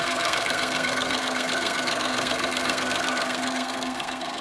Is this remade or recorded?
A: remade